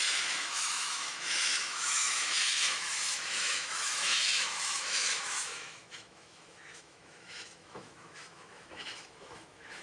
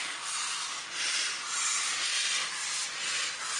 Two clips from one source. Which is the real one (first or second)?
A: second